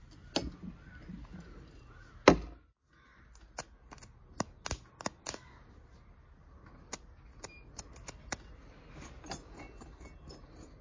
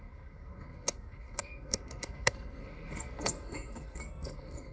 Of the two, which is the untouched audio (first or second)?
first